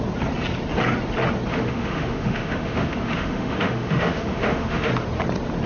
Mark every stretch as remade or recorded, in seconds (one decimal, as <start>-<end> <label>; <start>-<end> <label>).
0.0-1.5 recorded; 1.5-4.9 remade; 4.9-5.7 recorded